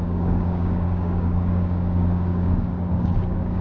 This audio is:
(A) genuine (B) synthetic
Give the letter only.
B